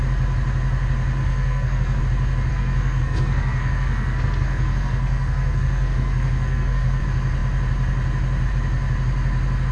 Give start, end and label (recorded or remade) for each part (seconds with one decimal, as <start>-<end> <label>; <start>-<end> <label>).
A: 0.0-1.2 recorded; 1.2-2.0 remade; 2.0-2.5 recorded; 2.5-7.0 remade; 7.0-9.7 recorded